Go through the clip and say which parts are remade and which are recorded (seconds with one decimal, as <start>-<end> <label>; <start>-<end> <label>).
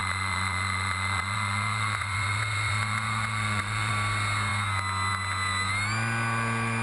0.0-3.9 remade; 3.9-6.8 recorded